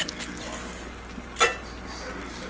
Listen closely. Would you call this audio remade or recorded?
recorded